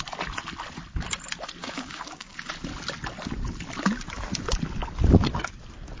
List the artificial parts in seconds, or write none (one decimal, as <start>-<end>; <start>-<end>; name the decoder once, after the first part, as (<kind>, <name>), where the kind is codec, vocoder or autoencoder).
1.6-2.5 (codec, DAC)